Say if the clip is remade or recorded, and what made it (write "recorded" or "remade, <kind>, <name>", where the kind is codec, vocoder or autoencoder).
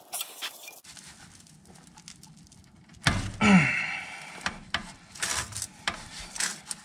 recorded